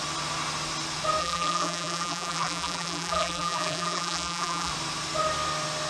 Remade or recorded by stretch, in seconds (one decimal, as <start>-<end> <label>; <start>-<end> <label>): 0.0-1.2 recorded; 1.2-4.7 remade; 4.7-5.9 recorded